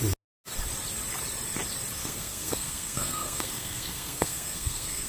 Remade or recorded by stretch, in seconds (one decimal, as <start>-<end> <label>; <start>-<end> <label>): 0.0-2.0 recorded; 2.0-5.1 remade